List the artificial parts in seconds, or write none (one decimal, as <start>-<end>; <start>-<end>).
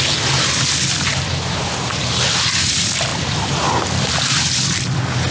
3.1-4.5